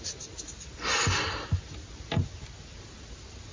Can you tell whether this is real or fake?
real